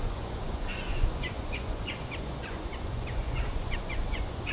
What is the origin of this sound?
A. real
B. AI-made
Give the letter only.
B